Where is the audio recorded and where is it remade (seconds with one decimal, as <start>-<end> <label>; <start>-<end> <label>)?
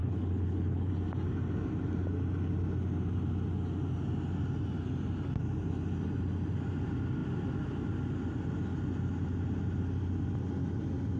0.0-0.9 remade; 0.9-11.2 recorded